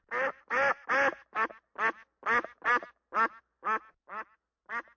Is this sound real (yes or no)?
yes